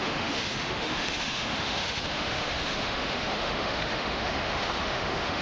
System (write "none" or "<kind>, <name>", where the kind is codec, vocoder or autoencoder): autoencoder, DAC-VAE